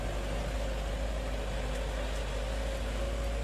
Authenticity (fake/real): real